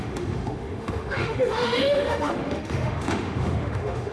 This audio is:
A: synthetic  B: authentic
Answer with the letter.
A